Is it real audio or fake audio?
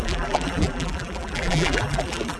fake